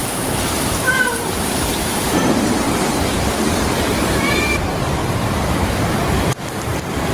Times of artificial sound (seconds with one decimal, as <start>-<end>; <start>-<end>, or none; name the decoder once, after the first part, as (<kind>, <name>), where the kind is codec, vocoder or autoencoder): 0.0-4.3 (vocoder, BigVGAN v2); 5.0-7.1